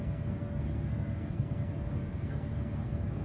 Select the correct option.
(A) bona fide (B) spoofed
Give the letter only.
B